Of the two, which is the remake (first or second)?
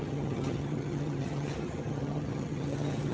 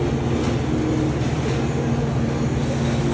first